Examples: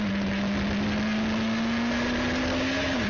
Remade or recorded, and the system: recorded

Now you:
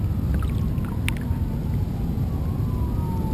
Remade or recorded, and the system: recorded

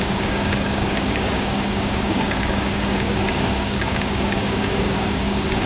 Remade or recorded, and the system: remade, codec, DAC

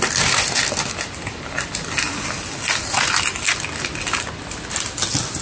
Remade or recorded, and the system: recorded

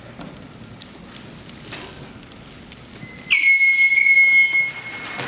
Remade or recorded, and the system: recorded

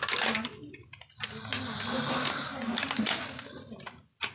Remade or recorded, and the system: recorded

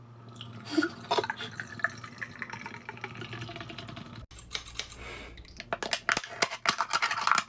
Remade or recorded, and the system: recorded